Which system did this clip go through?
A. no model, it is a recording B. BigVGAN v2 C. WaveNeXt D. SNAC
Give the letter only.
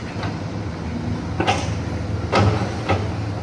A